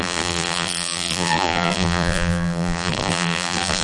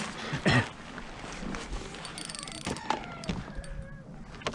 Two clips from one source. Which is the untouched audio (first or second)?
second